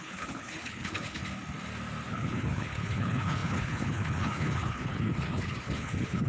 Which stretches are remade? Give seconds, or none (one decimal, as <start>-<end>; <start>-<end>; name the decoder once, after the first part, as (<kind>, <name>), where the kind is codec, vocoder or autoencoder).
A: 0.0-1.2 (codec, HILCodec); 2.1-6.3